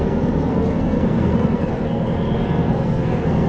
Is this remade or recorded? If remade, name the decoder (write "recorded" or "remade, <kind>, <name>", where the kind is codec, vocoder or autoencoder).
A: remade, codec, SNAC